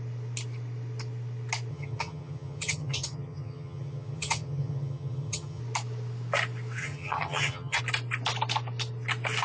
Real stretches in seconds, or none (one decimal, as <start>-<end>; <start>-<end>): 0.0-1.7; 5.6-6.8; 7.8-9.4